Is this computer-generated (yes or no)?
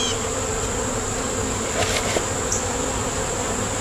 yes